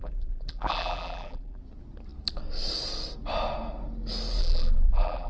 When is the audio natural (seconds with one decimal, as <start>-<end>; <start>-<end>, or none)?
1.6-4.4